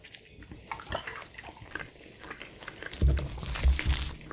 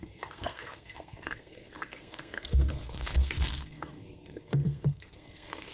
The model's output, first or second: second